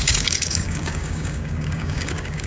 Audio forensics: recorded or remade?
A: remade